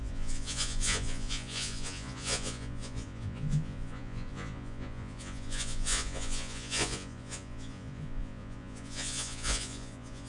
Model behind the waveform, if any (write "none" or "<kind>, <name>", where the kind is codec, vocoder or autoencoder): vocoder, Vocos